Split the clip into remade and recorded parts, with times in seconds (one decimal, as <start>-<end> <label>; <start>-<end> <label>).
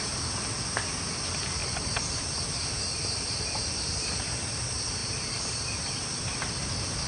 0.0-1.6 recorded; 1.6-4.2 remade; 4.2-5.0 recorded; 5.0-6.5 remade; 6.5-7.1 recorded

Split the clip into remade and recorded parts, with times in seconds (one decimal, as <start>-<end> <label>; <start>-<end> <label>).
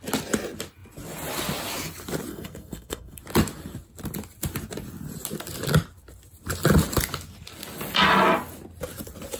0.0-2.3 recorded; 2.3-3.2 remade; 3.2-9.4 recorded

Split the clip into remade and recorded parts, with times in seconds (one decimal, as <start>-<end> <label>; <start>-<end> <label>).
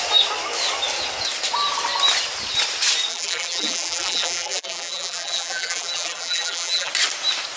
0.0-3.1 recorded; 3.1-6.9 remade; 6.9-7.6 recorded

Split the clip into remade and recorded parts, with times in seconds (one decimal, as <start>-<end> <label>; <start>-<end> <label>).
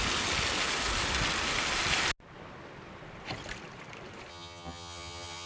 0.0-4.3 recorded; 4.3-5.5 remade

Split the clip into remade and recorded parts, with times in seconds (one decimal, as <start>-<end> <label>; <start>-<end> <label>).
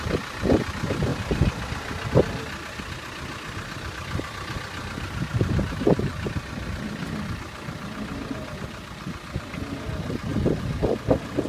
0.0-11.5 recorded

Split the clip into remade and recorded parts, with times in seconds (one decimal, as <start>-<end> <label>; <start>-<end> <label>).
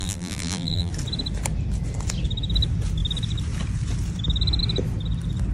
0.0-0.9 remade; 0.9-5.5 recorded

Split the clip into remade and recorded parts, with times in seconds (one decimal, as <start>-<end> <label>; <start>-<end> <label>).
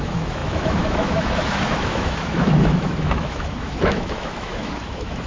0.0-5.3 remade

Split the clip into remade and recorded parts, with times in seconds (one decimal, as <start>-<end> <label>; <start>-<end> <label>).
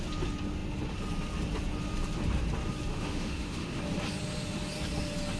0.0-2.9 recorded; 2.9-3.8 remade; 3.8-5.4 recorded